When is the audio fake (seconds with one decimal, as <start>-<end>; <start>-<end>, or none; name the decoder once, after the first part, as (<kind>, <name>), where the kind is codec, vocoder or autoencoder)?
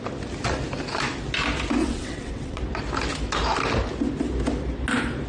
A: 1.8-2.6 (vocoder, WaveNeXt)